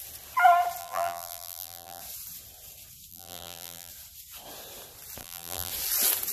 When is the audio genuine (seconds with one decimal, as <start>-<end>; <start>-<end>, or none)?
0.0-0.8; 2.0-3.1; 3.9-5.2; 5.7-6.3